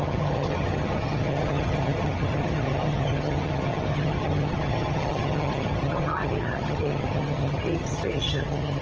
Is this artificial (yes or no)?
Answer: yes